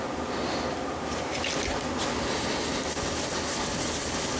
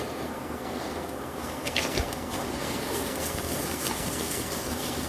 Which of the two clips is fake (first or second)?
second